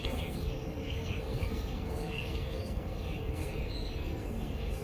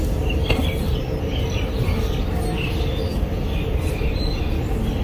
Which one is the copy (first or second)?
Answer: first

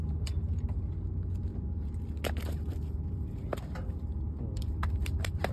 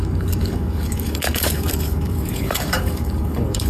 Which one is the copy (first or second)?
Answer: second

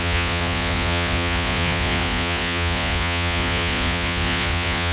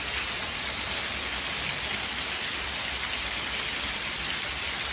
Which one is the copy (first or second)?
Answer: first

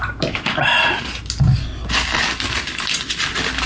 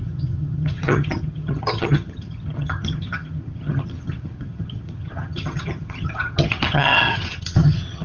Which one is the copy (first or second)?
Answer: second